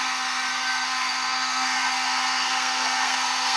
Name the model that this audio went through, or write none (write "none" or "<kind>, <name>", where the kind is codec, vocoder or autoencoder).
codec, SNAC